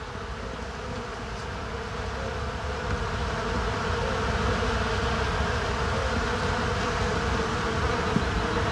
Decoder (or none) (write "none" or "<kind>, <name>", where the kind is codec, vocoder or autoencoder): none